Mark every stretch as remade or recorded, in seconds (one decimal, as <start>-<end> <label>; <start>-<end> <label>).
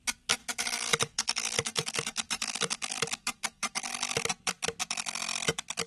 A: 0.0-0.4 recorded; 0.4-3.9 remade; 3.9-5.9 recorded